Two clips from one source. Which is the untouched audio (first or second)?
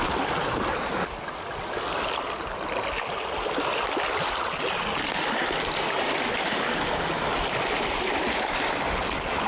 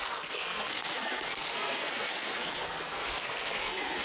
first